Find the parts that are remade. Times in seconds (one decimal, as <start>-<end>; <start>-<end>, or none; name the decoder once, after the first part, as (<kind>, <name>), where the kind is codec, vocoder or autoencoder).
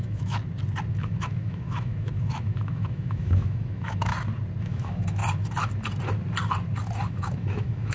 0.0-0.4 (autoencoder, DAC-VAE); 0.9-4.1; 4.6-5.2; 7.1-7.9